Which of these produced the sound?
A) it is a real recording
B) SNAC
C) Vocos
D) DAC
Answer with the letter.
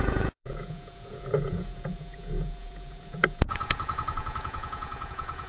C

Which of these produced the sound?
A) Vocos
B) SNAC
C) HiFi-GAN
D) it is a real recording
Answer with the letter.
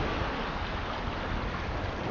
D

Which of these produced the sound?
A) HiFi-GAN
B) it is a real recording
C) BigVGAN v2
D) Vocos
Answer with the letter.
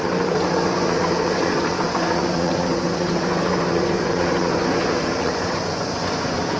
D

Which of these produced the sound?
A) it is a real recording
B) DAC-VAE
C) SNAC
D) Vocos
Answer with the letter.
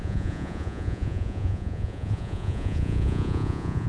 D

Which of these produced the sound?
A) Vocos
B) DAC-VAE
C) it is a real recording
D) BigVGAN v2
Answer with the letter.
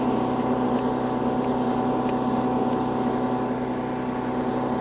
C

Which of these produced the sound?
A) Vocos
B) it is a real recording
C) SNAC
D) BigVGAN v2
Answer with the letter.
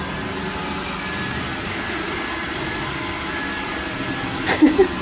B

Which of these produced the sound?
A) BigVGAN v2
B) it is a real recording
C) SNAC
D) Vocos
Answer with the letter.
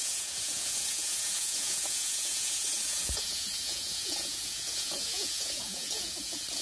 D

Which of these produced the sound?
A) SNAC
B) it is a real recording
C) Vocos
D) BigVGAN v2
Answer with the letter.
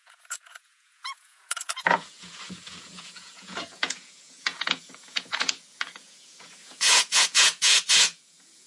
C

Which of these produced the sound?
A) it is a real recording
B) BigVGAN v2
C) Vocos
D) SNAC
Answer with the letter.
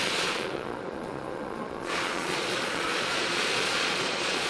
C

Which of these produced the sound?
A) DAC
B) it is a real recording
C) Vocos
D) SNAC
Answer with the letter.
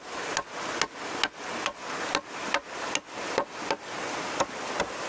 B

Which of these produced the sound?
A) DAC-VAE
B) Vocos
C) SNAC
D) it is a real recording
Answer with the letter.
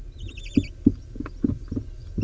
D